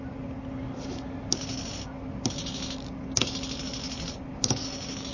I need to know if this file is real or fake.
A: real